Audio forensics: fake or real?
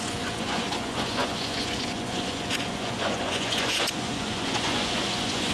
fake